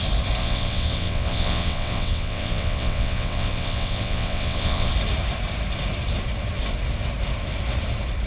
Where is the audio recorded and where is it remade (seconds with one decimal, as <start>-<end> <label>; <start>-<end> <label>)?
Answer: 0.0-0.4 recorded; 0.4-4.9 remade; 4.9-8.3 recorded